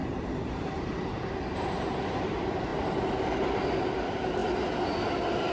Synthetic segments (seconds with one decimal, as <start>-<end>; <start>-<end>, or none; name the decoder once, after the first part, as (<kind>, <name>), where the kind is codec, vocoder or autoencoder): 0.0-2.2 (vocoder, BigVGAN v2)